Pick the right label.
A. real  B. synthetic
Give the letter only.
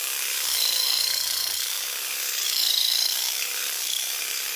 B